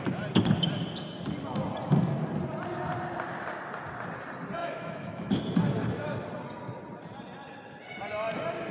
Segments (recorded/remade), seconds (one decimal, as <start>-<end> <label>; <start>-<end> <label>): 0.0-4.6 recorded; 4.6-5.4 remade; 5.4-8.7 recorded